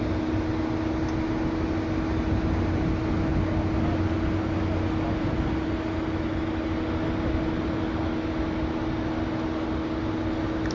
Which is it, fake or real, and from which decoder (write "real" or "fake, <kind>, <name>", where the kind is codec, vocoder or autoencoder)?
real